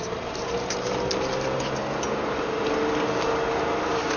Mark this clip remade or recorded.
recorded